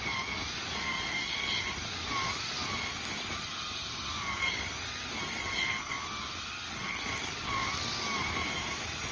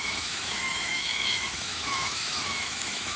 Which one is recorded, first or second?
first